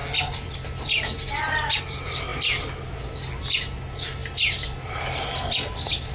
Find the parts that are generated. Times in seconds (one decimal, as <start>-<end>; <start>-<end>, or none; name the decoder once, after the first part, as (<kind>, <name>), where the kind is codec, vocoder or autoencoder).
none